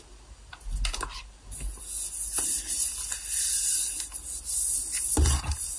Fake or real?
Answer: real